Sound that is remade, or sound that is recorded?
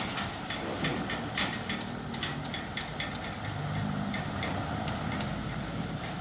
recorded